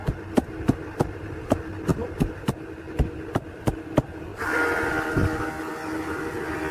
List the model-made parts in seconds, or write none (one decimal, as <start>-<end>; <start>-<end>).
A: none